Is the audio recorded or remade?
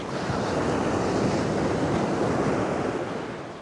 recorded